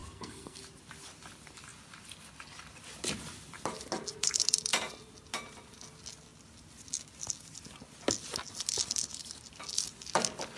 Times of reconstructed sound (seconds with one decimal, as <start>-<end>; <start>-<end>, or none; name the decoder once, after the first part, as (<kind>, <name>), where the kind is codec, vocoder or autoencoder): 0.0-0.6 (codec, SNAC)